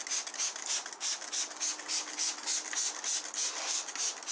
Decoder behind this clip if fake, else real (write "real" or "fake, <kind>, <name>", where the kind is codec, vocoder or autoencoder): real